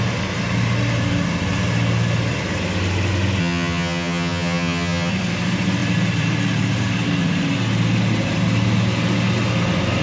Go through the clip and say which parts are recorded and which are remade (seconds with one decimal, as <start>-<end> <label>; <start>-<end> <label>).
0.0-3.4 recorded; 3.4-5.1 remade; 5.1-10.0 recorded